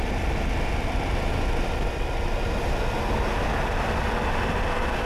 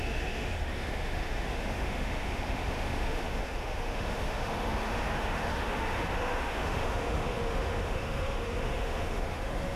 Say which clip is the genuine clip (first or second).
first